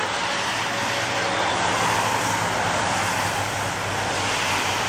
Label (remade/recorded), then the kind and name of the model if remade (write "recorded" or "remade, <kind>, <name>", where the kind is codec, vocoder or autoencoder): recorded